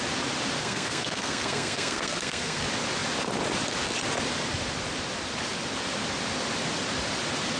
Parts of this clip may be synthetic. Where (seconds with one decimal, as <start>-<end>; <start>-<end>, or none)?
0.6-2.6